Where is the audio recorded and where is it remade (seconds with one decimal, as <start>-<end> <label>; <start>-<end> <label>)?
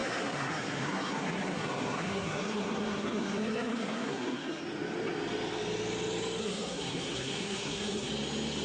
0.0-4.6 remade; 4.6-6.4 recorded; 6.4-8.1 remade; 8.1-8.6 recorded